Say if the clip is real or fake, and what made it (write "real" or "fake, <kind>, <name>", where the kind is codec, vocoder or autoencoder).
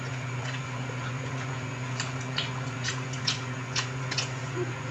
fake, vocoder, Vocos